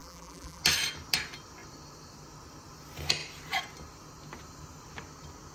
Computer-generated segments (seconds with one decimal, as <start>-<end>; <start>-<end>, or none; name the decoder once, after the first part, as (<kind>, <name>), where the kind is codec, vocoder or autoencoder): 0.0-0.6 (vocoder, BigVGAN v2)

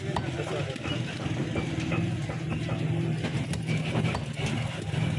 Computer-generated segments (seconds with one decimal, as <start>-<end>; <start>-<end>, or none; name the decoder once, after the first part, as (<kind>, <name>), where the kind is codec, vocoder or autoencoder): 1.4-2.2 (vocoder, BigVGAN v2); 3.3-4.0

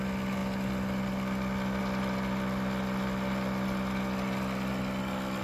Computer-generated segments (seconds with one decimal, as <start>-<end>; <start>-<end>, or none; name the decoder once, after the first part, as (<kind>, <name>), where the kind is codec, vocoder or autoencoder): none

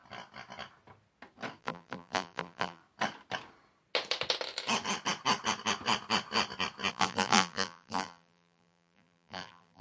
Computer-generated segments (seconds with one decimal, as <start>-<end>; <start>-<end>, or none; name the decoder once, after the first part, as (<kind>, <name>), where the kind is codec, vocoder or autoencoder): 1.6-2.8 (vocoder, BigVGAN v2); 6.9-9.8